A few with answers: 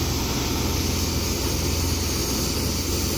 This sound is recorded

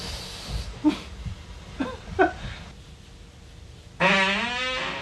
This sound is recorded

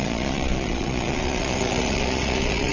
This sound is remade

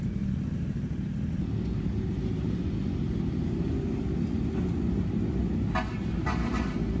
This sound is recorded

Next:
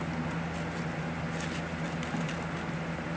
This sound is recorded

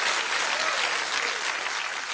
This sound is recorded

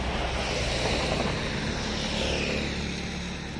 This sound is recorded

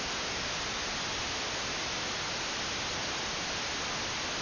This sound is recorded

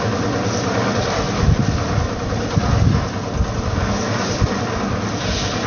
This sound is recorded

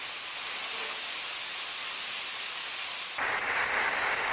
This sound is recorded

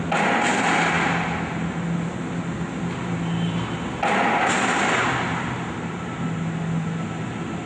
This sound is recorded